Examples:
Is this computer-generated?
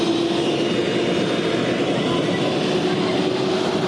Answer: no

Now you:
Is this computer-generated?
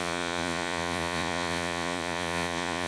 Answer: yes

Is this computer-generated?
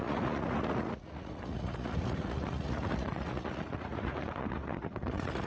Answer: yes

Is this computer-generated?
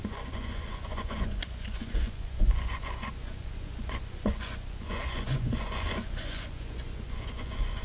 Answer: yes